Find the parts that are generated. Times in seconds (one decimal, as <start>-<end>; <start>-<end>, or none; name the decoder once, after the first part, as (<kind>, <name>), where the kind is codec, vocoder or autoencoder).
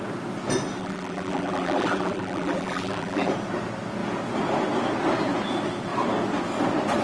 0.8-3.3 (vocoder, BigVGAN v2)